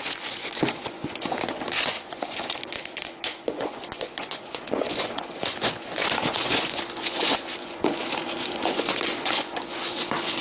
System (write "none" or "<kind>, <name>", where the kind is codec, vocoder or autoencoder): vocoder, Vocos